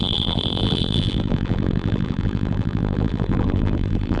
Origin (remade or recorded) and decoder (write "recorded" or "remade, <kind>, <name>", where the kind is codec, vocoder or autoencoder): remade, vocoder, BigVGAN v2